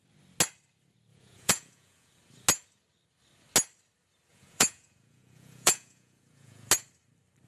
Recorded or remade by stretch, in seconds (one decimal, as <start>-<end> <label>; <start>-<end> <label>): 0.0-1.1 recorded; 1.1-2.2 remade; 2.2-4.3 recorded; 4.3-6.7 remade; 6.7-7.5 recorded